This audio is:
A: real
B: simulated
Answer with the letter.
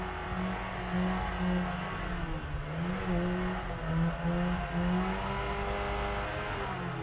A